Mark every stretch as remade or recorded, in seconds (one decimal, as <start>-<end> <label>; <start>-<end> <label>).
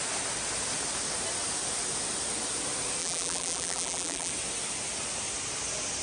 0.0-3.0 recorded; 3.0-4.3 remade; 4.3-6.0 recorded